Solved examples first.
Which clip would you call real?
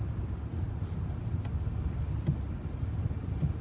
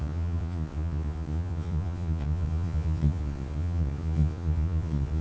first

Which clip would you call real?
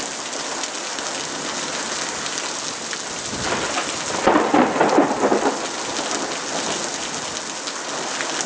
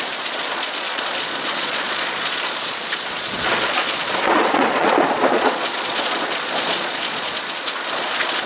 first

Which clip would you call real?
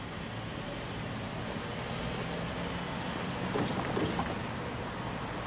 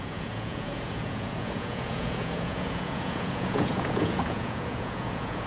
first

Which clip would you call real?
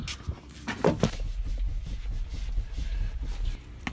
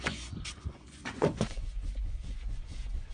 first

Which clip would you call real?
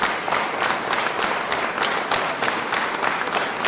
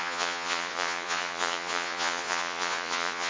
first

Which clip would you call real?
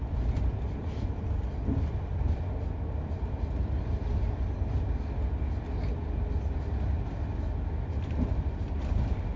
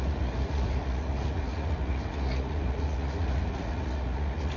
first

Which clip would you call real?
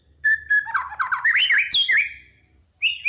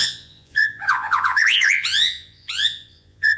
first